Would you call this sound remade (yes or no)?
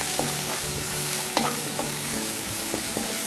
yes